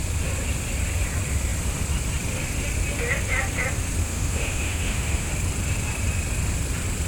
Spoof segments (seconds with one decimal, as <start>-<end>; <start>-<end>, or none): 4.0-5.3

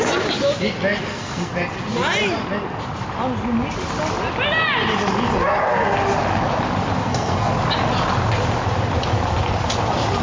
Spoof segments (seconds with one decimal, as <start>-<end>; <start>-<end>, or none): 1.0-1.5; 7.0-7.5

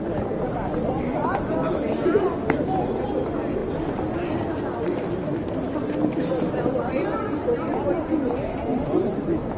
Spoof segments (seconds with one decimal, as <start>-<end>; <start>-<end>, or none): none

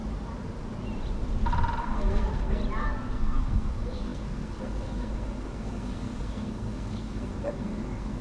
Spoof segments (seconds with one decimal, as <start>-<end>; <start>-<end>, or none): 1.8-2.6; 3.1-8.2

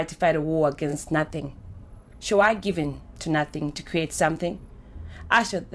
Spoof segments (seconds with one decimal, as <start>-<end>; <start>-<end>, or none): 0.9-3.0; 3.6-4.7

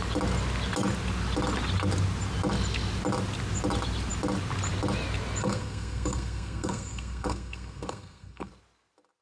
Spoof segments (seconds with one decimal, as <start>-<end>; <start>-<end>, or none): 5.4-8.5